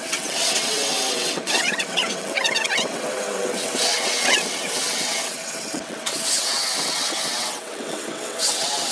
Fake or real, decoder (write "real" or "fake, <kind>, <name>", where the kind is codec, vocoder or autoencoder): fake, vocoder, WaveNeXt